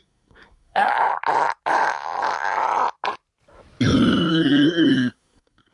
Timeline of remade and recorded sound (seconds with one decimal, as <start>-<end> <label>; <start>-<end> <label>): 0.0-0.9 remade; 0.9-4.3 recorded; 4.3-5.7 remade